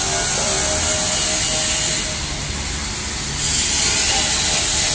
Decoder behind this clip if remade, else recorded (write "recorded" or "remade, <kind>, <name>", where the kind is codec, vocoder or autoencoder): recorded